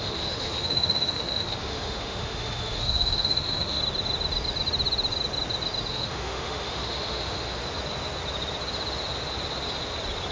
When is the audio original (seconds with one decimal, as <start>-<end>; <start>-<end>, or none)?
3.8-5.9; 7.6-10.3